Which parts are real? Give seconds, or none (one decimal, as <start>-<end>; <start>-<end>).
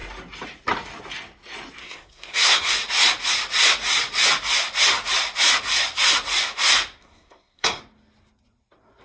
0.0-1.8; 2.7-7.0; 7.8-9.0